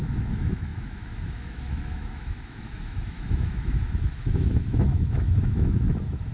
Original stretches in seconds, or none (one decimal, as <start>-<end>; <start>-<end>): none

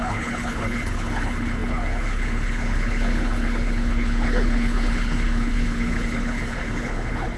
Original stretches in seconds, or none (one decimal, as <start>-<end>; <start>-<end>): none